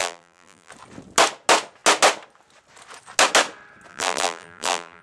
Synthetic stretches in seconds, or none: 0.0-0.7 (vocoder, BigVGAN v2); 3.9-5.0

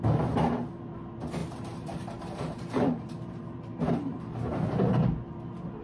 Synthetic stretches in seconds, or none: 1.4-4.2 (vocoder, BigVGAN v2)

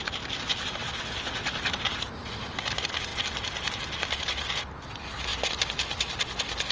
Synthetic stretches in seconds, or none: 0.8-2.6 (vocoder, BigVGAN v2)

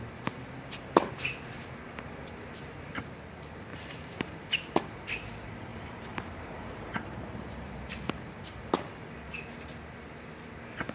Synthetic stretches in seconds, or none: 3.7-4.8 (vocoder, BigVGAN v2); 5.7-8.6

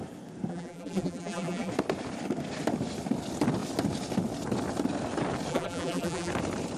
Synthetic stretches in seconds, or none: 0.5-1.7 (vocoder, BigVGAN v2); 5.5-6.3

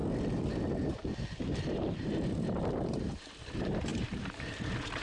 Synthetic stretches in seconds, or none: 1.7-5.0 (vocoder, BigVGAN v2)